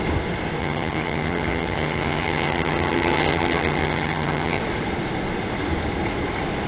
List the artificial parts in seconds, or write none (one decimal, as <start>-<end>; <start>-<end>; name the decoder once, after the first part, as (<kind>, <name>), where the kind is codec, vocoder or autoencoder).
0.6-4.6 (vocoder, HiFi-GAN)